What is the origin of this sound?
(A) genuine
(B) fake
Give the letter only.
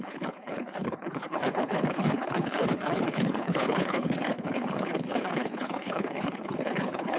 B